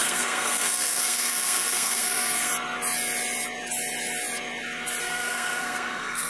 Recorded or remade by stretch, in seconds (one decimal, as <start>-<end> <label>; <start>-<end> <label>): 0.0-2.5 remade; 2.5-5.0 recorded; 5.0-6.3 remade